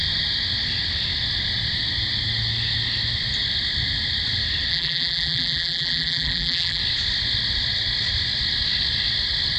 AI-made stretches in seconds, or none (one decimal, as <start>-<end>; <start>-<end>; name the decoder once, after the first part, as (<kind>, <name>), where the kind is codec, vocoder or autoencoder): 4.7-6.8 (vocoder, BigVGAN v2)